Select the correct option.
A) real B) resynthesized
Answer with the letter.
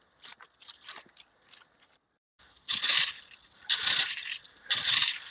A